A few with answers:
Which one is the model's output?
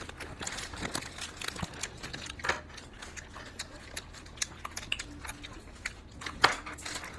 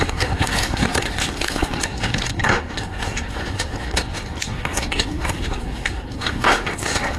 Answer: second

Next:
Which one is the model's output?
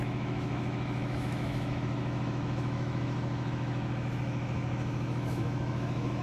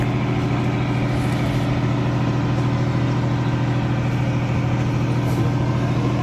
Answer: first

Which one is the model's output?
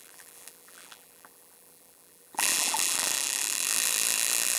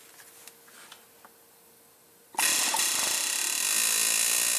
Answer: first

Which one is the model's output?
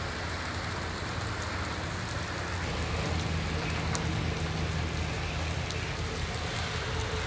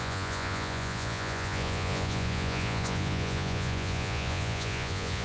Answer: second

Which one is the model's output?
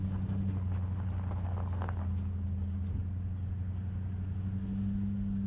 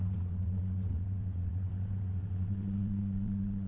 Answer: second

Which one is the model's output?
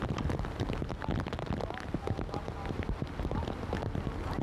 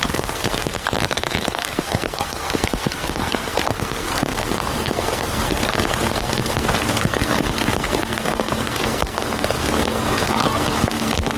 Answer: second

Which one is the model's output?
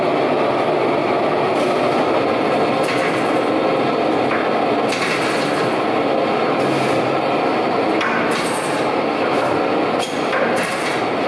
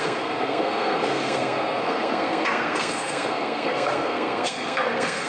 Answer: second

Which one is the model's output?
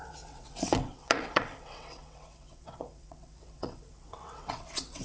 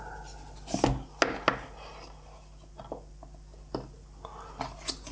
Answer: first